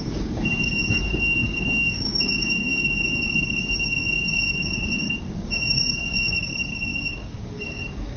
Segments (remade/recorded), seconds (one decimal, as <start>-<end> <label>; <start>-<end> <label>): 0.0-8.2 remade